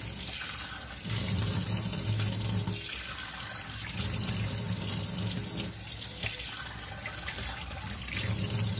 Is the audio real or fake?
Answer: real